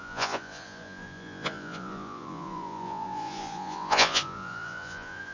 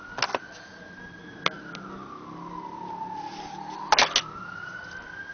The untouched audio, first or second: second